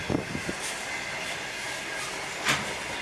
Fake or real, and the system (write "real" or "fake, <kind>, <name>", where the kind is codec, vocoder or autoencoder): real